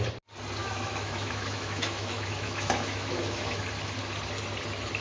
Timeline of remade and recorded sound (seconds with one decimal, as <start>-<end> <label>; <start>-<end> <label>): 0.0-0.6 recorded; 0.6-3.6 remade; 3.6-5.0 recorded